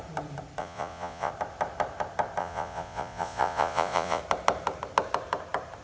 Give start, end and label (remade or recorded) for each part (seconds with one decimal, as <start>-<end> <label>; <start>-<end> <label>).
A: 0.0-0.6 recorded; 0.6-1.3 remade; 1.3-2.4 recorded; 2.4-4.2 remade; 4.2-5.8 recorded